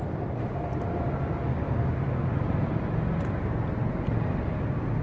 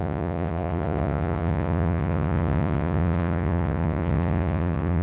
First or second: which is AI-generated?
second